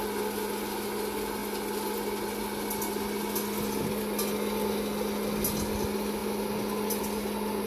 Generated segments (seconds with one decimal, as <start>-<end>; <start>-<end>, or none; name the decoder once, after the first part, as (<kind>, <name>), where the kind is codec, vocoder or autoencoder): none